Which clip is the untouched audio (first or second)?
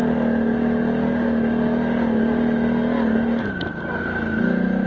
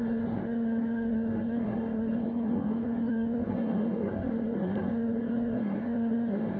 first